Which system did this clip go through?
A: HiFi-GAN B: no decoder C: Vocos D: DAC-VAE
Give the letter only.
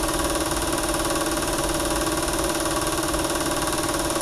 B